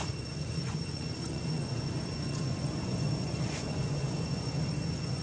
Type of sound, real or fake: fake